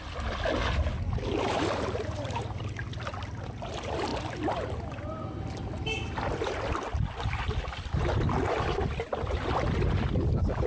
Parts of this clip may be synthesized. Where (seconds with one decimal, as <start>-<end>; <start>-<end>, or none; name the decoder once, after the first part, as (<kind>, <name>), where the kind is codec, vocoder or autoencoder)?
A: none

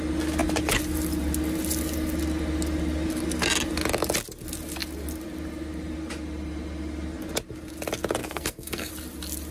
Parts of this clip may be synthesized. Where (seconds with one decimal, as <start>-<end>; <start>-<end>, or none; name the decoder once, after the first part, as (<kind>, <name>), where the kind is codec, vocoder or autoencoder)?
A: 8.2-8.9 (codec, SNAC)

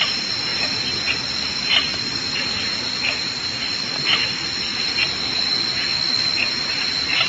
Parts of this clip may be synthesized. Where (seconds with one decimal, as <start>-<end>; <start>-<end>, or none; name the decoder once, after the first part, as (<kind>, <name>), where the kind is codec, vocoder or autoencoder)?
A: 0.5-1.1 (vocoder, BigVGAN v2); 4.7-5.4

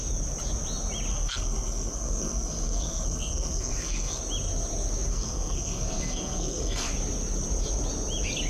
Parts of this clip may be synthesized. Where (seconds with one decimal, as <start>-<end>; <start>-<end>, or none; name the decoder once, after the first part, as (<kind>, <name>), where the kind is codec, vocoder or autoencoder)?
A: 1.1-4.2 (codec, SNAC); 5.1-6.9